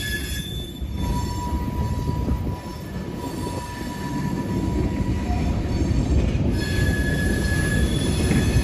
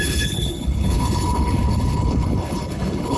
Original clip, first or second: first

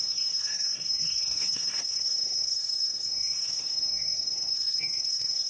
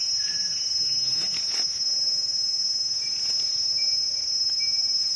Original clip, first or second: second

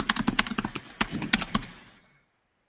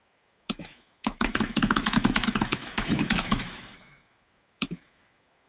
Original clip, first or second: first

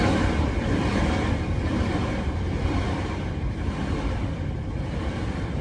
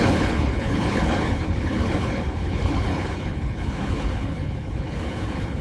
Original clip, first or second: first